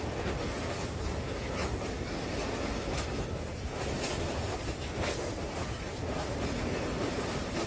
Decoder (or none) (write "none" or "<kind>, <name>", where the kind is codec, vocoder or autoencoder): none